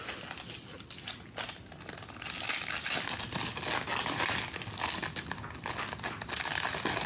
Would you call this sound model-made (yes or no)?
no